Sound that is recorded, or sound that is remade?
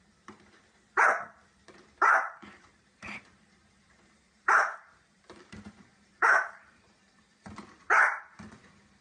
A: remade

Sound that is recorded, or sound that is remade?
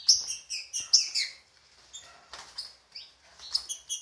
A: recorded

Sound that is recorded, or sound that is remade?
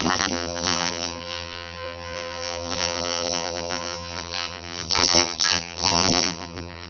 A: remade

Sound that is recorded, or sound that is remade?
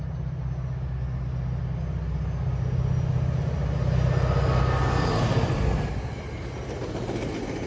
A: recorded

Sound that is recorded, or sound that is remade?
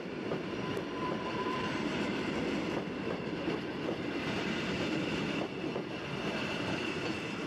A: remade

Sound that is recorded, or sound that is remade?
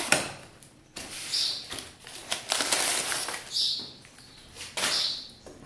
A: remade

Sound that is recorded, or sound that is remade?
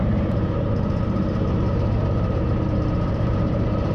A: remade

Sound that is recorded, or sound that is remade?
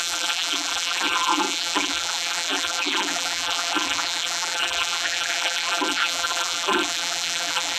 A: remade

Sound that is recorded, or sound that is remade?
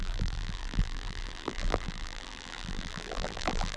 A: remade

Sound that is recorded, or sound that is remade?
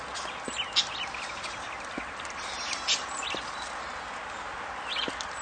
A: recorded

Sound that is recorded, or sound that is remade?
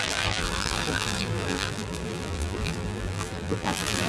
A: remade